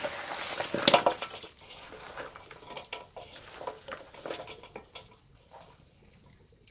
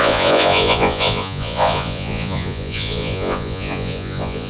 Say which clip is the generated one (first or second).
second